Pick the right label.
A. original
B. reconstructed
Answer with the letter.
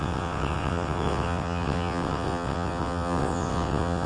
B